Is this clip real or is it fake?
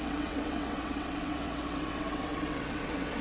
fake